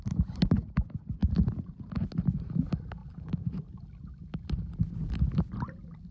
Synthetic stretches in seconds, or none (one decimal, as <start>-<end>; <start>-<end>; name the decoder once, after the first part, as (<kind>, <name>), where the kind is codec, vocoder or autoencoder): none